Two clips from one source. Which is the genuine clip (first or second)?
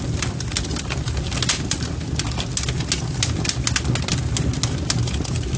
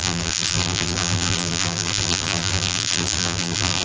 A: first